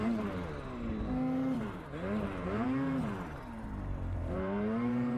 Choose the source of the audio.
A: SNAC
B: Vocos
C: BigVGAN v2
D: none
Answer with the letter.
C